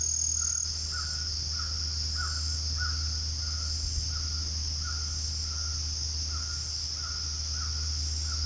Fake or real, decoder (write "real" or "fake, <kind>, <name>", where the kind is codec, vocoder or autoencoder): real